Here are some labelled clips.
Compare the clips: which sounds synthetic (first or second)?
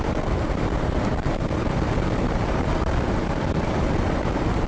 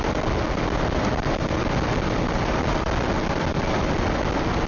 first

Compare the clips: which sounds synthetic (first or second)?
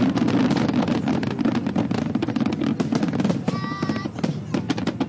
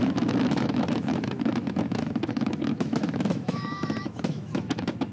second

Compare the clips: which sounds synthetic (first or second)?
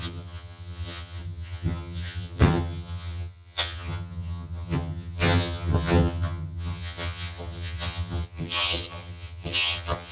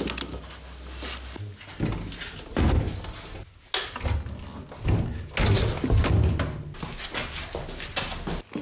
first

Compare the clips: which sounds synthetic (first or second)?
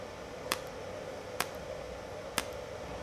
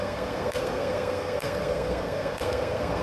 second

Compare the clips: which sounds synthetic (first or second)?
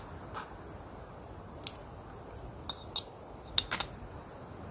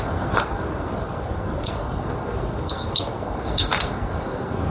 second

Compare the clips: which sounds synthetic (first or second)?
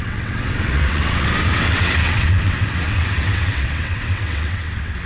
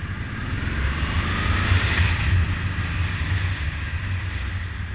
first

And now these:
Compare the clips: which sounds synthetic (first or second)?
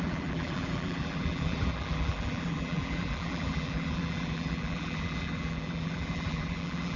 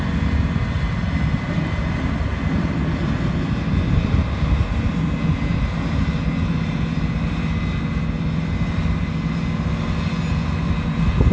first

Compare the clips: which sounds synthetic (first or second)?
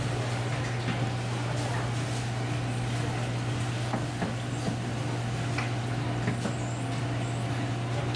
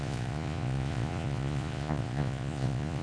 second